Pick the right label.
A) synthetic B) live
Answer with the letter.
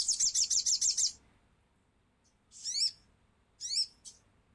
B